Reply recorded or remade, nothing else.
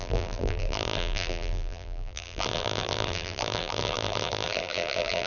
remade